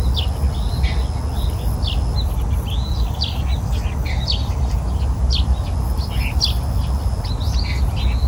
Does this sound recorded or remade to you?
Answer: recorded